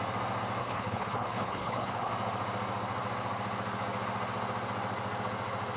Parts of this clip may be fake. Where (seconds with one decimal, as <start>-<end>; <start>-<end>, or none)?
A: 0.6-2.1